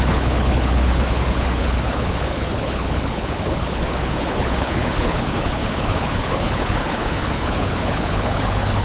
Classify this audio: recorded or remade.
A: remade